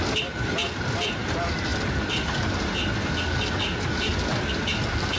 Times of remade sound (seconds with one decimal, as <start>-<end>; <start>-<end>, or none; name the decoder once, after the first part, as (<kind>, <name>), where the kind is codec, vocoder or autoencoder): none